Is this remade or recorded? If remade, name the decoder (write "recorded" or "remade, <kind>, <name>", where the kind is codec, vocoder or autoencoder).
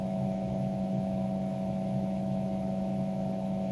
remade, autoencoder, DAC-VAE